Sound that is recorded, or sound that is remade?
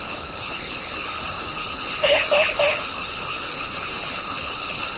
remade